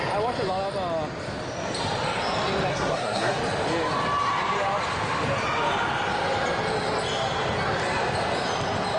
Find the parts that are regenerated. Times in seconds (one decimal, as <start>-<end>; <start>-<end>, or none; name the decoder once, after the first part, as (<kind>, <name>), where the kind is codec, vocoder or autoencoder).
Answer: 2.7-3.4 (codec, SNAC)

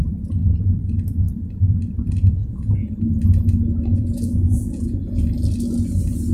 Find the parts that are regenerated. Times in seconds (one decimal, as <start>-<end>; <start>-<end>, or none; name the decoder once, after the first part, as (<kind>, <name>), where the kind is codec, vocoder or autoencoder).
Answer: 2.4-3.0 (vocoder, Vocos); 3.9-5.2

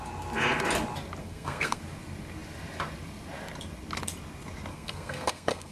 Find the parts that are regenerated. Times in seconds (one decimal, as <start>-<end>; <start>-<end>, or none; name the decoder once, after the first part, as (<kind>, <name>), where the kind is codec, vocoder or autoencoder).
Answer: 1.2-1.8 (codec, SNAC); 4.7-5.7